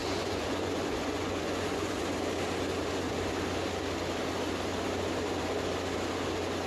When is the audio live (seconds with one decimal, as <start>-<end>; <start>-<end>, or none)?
2.0-6.7

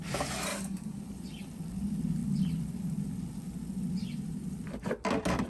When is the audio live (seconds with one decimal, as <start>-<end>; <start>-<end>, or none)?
0.0-0.5; 1.0-5.5

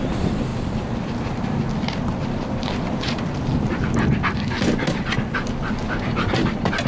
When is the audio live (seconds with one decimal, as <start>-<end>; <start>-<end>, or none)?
0.0-6.9

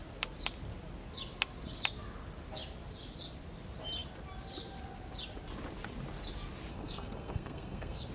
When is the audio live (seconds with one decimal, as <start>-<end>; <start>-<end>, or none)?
0.0-6.7

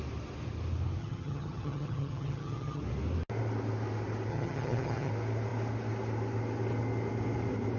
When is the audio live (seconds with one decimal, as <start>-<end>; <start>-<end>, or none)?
0.0-1.0; 2.8-4.3; 5.1-7.8

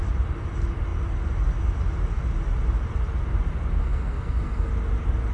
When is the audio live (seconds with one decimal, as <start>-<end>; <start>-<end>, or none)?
0.0-3.8; 4.7-5.3